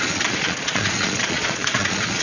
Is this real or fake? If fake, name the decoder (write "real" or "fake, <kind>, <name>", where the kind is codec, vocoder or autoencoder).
fake, vocoder, Vocos